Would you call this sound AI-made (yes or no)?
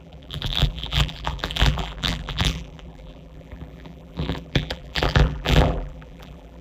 yes